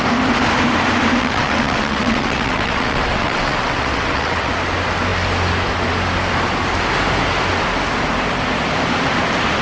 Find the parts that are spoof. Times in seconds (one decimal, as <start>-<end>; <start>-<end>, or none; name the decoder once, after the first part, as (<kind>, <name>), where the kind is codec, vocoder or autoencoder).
1.2-4.5 (vocoder, WaveNeXt)